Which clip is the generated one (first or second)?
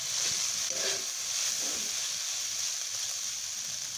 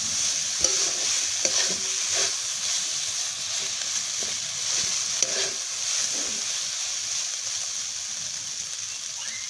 first